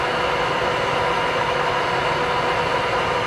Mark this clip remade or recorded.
recorded